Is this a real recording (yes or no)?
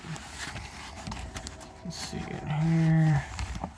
no